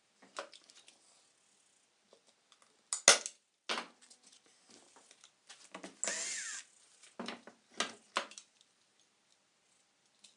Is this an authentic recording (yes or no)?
yes